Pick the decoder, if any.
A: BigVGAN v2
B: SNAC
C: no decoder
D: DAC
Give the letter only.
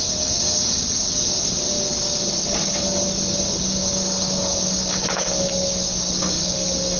D